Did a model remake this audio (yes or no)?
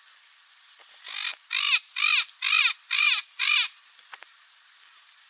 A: yes